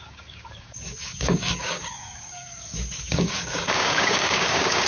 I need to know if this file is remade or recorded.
remade